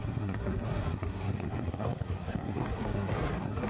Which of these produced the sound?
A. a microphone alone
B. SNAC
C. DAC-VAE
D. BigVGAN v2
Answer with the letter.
B